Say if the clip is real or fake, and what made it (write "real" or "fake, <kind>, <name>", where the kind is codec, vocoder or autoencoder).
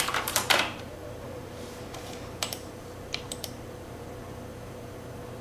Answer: fake, vocoder, BigVGAN v2